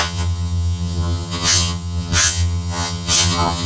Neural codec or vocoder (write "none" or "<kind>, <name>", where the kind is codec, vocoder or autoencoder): vocoder, HiFi-GAN